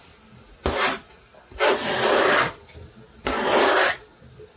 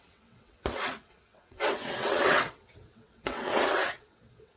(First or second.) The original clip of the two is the first